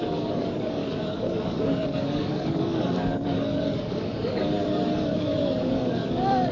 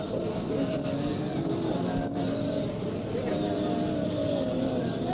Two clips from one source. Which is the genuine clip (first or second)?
second